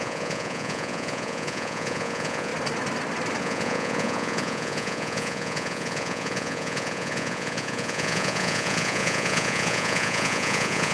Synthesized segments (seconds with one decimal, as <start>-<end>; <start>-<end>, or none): 0.0-2.5; 3.4-10.9